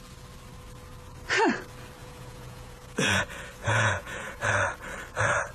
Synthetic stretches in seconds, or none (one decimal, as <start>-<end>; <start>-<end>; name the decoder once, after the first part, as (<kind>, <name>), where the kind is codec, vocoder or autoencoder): 2.0-3.2 (vocoder, Vocos); 3.6-4.4